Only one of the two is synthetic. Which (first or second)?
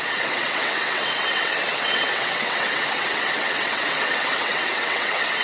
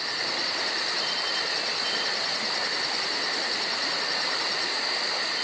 first